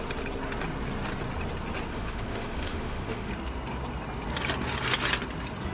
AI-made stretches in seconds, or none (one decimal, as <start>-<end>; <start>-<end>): 1.9-3.3